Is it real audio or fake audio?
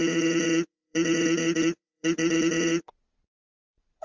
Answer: fake